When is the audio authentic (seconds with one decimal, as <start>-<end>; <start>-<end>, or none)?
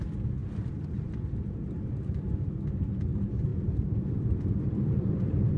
0.0-5.6